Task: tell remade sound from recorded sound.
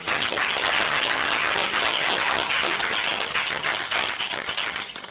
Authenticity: remade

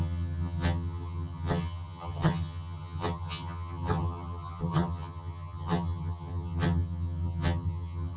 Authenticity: remade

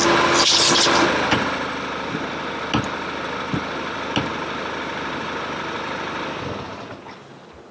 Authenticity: recorded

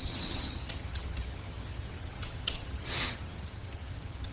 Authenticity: remade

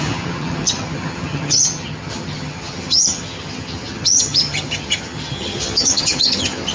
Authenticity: remade